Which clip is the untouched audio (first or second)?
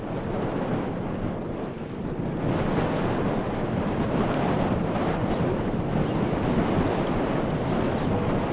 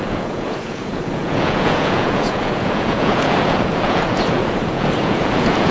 first